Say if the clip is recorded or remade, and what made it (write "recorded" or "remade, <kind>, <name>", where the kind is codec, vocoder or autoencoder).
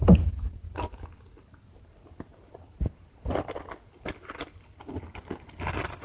recorded